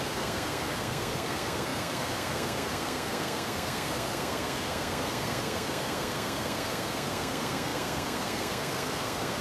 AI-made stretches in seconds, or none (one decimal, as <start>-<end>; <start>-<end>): 0.0-9.4